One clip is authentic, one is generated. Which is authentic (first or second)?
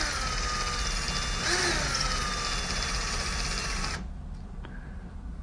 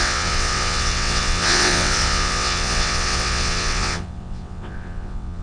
first